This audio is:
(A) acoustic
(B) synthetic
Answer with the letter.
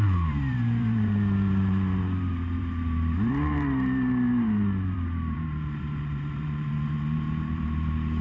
B